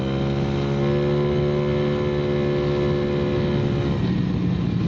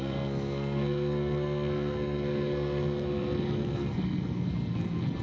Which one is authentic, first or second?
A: first